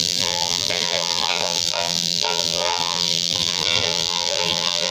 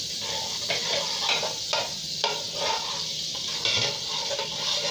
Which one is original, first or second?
second